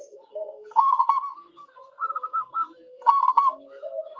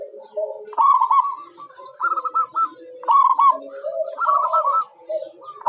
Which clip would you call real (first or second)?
second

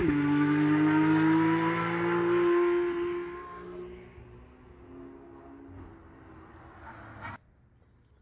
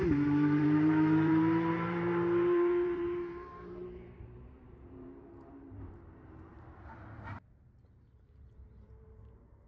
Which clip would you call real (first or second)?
first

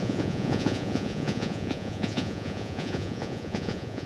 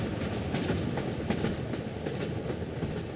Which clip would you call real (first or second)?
second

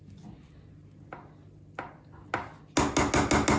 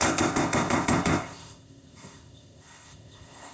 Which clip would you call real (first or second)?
first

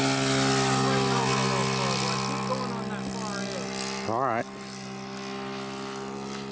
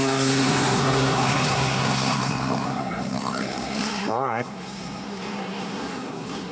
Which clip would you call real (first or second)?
first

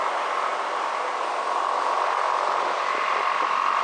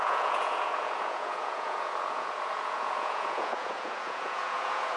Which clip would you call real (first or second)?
first